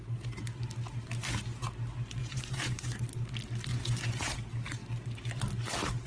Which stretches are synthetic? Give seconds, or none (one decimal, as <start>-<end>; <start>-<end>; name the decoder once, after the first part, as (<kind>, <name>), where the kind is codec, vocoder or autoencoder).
2.2-3.0 (vocoder, Vocos); 3.7-4.2